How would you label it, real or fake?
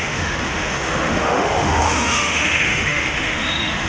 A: fake